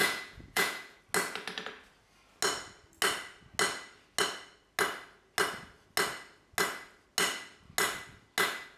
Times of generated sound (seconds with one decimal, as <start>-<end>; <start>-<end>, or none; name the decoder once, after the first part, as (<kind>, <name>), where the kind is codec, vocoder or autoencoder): 0.0-1.0 (vocoder, Vocos)